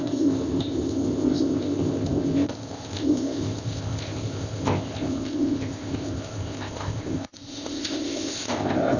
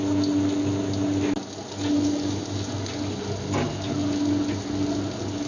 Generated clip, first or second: first